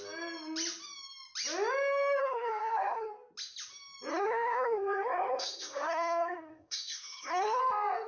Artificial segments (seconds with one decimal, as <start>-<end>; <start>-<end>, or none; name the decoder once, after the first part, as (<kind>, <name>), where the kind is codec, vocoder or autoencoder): 2.2-3.1 (codec, SNAC); 4.1-7.6